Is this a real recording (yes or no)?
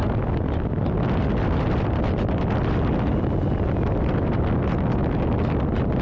yes